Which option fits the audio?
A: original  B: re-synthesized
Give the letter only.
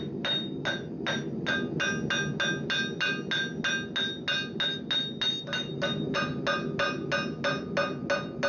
A